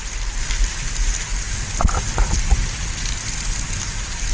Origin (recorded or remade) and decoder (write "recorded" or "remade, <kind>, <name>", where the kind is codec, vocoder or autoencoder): recorded